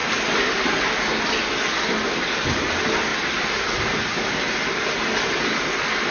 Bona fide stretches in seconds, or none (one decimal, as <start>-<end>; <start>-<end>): 0.0-6.1